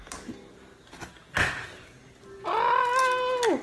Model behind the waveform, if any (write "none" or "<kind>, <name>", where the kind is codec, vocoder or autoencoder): none